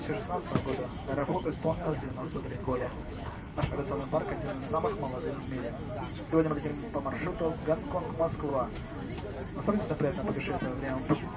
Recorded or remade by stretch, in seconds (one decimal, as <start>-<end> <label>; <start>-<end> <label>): 0.0-1.2 recorded; 1.2-3.6 remade; 3.6-11.4 recorded